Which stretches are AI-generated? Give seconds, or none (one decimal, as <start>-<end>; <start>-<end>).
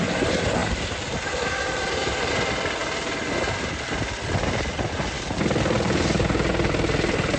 0.6-2.3